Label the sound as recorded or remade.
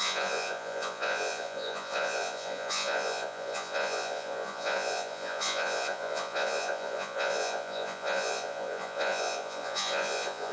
remade